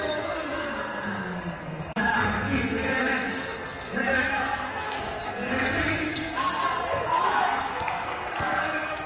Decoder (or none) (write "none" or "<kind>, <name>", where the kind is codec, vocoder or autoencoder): codec, SNAC